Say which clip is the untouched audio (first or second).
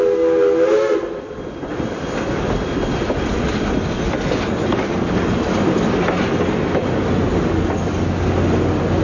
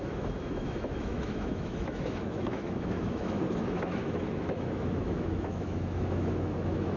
first